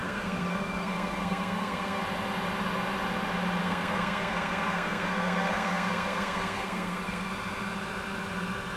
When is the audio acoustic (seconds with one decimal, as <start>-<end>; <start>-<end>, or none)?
2.0-3.6; 7.3-8.8